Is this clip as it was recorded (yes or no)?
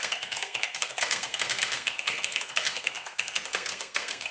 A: no